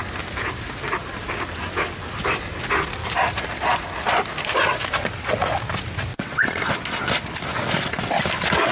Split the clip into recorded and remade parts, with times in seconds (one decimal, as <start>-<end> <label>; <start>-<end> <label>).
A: 0.0-6.1 recorded; 6.1-6.6 remade; 6.6-8.7 recorded